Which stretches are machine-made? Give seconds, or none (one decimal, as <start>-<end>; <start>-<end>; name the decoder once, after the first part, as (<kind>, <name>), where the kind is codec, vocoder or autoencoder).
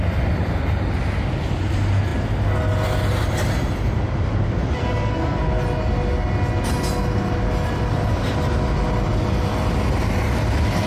4.8-5.4 (codec, SNAC)